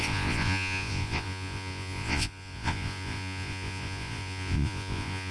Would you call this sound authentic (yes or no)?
no